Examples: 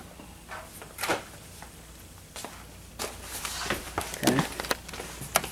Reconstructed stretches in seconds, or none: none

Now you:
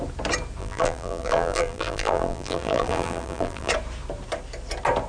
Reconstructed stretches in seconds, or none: 0.6-3.7 (vocoder, BigVGAN v2)

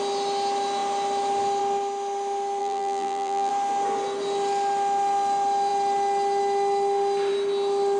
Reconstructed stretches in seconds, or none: 2.6-3.5 (vocoder, BigVGAN v2)